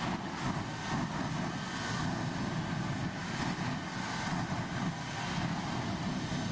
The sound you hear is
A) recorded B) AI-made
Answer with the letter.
A